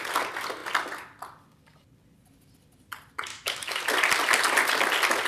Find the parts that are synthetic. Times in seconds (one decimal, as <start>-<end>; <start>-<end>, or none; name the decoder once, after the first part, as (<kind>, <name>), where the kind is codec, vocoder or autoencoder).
3.3-3.8 (autoencoder, DAC-VAE)